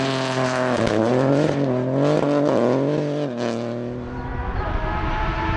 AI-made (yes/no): no